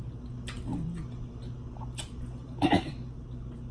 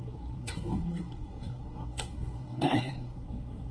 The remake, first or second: second